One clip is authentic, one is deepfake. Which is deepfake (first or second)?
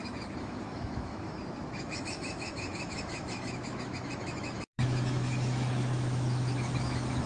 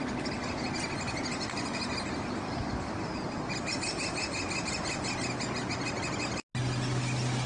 first